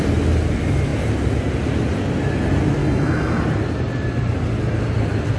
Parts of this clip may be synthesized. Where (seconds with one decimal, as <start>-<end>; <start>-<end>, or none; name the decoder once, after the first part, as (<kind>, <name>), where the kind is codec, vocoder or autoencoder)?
2.8-3.4 (autoencoder, DAC-VAE)